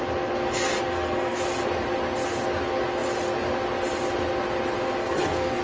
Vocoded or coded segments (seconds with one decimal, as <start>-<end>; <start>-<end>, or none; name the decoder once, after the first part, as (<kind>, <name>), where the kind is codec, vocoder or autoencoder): 0.9-1.4 (codec, SNAC); 5.0-5.6